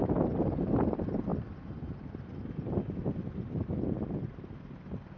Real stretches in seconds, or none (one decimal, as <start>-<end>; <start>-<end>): 0.0-5.2